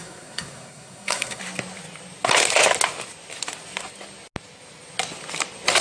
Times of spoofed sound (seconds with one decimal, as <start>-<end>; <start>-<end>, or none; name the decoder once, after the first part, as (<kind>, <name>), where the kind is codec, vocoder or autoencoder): 0.0-1.4 (codec, SNAC)